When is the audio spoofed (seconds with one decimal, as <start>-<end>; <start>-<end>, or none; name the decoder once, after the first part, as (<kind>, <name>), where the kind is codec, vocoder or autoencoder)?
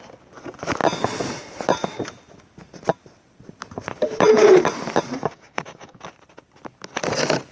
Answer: 5.2-6.0 (codec, DAC)